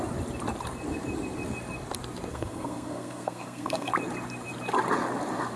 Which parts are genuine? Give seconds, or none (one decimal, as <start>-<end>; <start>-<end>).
0.0-2.3; 3.9-5.6